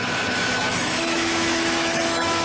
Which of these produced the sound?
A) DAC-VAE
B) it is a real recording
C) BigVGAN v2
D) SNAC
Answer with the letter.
A